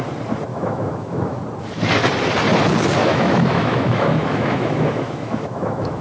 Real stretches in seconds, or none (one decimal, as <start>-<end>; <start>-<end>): 0.0-0.5; 1.4-3.0